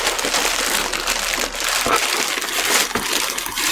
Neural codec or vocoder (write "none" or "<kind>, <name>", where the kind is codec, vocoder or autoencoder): none